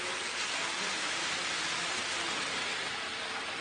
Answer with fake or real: real